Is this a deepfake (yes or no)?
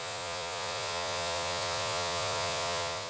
yes